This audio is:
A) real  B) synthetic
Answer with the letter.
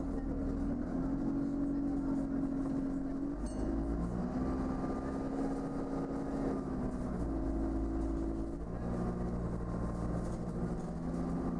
A